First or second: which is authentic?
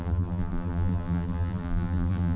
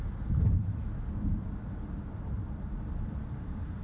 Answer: second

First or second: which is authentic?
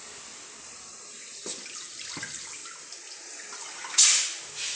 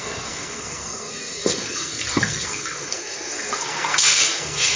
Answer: first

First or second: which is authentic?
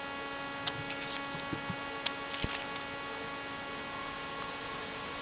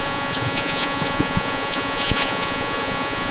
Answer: first